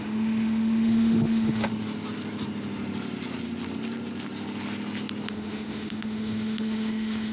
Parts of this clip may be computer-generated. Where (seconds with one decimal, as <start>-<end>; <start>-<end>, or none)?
0.0-1.7; 5.3-7.3